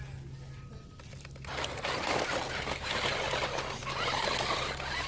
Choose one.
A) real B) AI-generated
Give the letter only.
A